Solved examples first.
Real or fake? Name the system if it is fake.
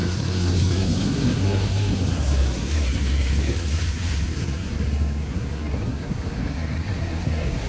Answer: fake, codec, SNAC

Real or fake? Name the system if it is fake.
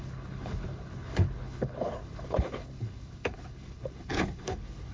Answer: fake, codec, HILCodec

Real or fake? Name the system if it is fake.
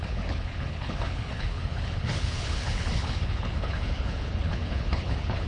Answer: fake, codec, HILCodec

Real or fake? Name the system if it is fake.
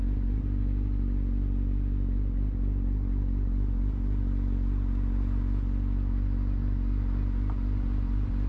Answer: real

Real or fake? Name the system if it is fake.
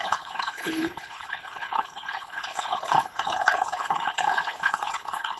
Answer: fake, codec, HILCodec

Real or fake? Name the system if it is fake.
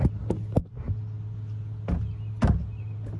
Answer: real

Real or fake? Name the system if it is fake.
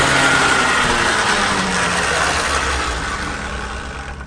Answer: real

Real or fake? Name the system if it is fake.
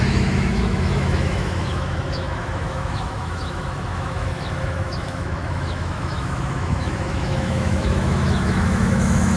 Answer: fake, autoencoder, DAC-VAE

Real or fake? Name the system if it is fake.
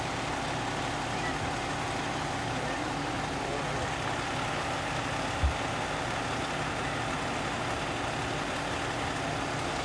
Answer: real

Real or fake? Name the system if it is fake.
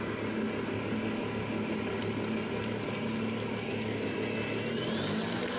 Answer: real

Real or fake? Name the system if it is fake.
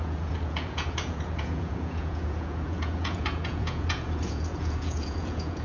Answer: fake, vocoder, Vocos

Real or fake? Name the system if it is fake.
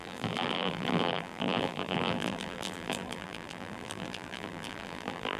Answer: fake, vocoder, BigVGAN v2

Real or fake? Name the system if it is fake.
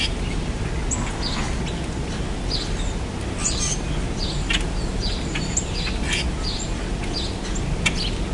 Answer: real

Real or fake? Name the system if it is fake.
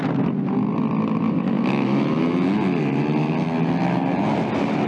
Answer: real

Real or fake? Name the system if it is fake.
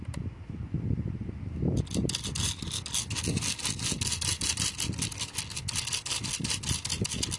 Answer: real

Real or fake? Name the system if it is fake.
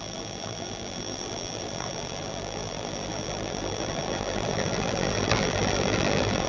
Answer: fake, vocoder, BigVGAN v2